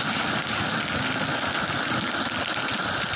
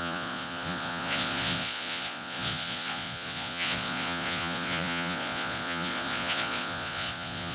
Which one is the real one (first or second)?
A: first